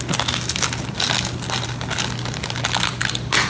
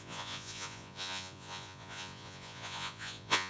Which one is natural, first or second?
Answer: first